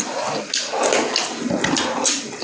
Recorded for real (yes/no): yes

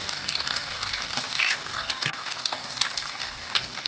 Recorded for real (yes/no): no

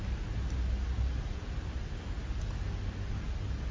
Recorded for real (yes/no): yes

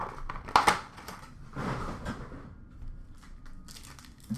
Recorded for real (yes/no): yes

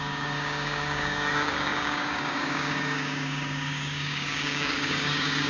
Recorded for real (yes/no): no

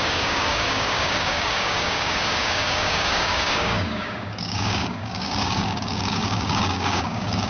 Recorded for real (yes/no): no